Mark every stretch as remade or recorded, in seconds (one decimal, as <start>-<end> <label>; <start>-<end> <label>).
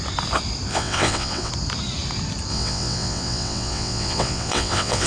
0.0-0.7 recorded; 0.7-1.5 remade; 1.5-2.5 recorded; 2.5-5.1 remade